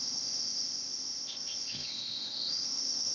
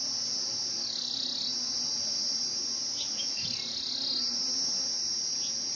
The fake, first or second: first